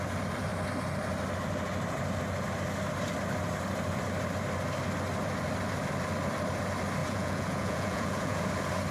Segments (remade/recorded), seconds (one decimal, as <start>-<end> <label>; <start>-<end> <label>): 0.0-7.0 recorded; 7.0-8.4 remade; 8.4-8.9 recorded